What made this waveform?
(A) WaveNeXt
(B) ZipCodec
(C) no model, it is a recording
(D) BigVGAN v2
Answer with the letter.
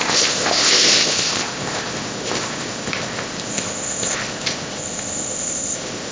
B